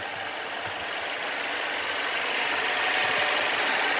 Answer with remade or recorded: recorded